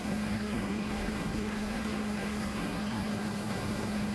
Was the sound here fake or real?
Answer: fake